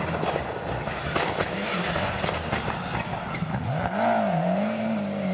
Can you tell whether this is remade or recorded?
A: recorded